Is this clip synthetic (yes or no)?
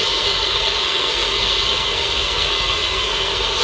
yes